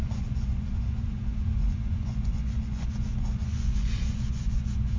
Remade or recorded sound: remade